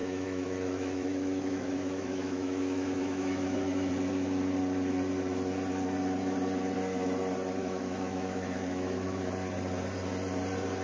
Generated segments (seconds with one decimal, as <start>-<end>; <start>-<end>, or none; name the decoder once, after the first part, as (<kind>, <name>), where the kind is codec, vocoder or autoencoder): 0.0-3.9 (autoencoder, DAC-VAE); 7.6-9.3